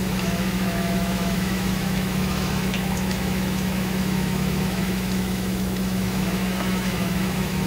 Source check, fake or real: fake